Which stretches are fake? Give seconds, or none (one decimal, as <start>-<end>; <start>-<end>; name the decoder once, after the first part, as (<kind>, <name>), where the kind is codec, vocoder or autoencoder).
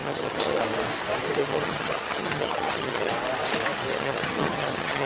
0.0-0.6 (vocoder, HiFi-GAN); 1.4-3.1; 3.9-5.1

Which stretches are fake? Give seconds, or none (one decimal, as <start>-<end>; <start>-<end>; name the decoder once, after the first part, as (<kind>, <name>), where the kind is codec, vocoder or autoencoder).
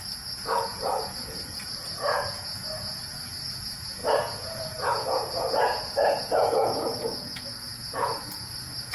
0.0-8.9 (vocoder, Vocos)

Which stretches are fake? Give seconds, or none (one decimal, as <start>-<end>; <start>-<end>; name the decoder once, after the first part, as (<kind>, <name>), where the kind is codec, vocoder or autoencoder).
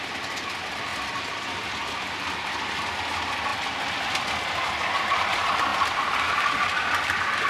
none